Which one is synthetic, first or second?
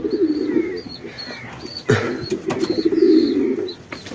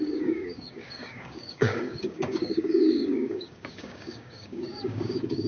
second